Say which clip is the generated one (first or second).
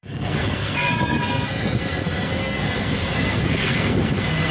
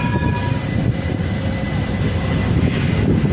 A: first